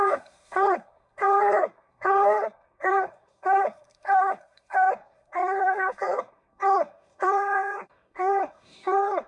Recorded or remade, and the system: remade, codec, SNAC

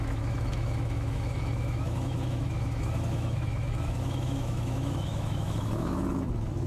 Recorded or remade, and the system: remade, autoencoder, DAC-VAE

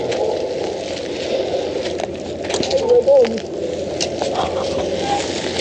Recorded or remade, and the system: recorded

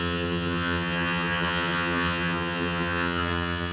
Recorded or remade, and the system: remade, vocoder, HiFi-GAN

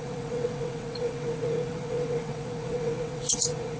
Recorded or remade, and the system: remade, vocoder, WaveNeXt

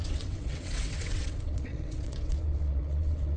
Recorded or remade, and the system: remade, vocoder, WaveNeXt